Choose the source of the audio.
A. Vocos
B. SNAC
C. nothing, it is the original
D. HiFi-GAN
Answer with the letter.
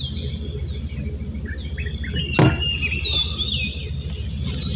C